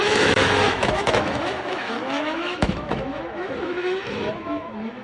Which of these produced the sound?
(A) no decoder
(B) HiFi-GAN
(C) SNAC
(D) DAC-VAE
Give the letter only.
D